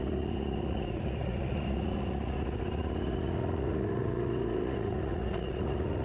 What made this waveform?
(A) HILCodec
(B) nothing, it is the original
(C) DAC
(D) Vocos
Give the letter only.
D